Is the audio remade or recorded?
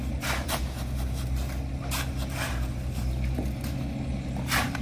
recorded